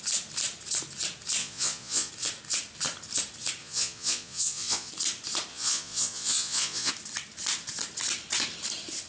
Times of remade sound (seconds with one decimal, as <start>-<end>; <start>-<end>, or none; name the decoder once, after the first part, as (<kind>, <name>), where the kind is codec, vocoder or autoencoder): 1.4-2.1 (vocoder, Vocos); 3.6-4.9; 5.5-6.9